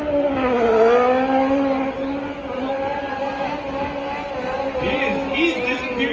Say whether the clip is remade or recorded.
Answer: recorded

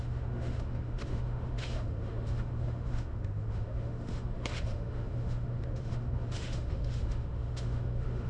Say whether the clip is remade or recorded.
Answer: remade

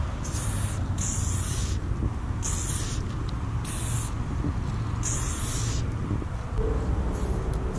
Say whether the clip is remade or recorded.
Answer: recorded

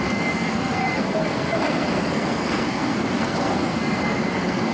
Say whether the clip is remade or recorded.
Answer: remade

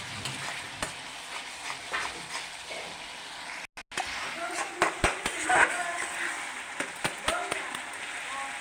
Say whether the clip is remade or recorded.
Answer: recorded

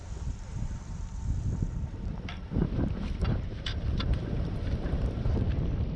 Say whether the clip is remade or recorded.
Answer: remade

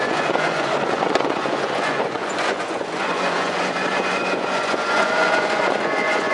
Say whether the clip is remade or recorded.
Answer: remade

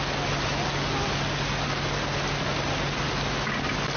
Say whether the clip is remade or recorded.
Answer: recorded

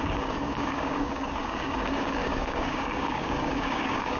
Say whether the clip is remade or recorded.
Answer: remade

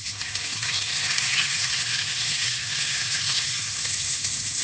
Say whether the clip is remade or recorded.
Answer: remade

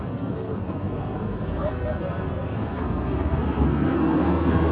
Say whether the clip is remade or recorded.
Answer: remade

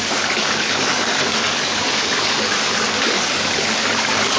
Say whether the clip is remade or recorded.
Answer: remade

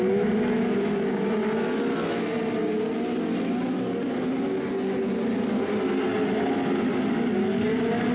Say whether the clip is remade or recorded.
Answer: recorded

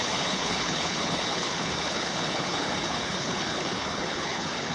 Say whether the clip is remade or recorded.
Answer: remade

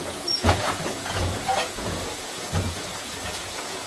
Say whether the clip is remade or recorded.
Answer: remade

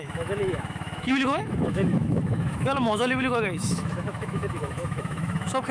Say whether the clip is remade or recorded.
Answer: remade